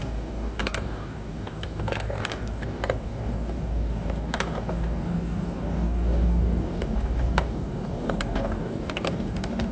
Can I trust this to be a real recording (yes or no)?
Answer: no